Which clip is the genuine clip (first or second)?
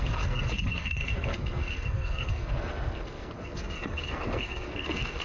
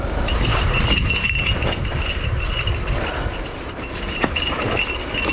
second